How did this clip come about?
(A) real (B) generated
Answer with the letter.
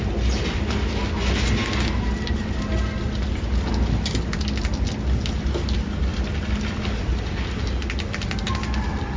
A